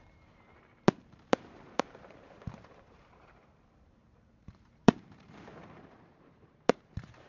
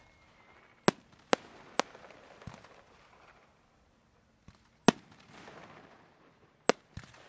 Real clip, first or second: second